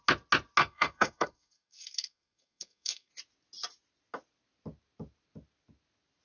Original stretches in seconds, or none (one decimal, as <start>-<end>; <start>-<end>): 0.0-0.6; 3.1-6.2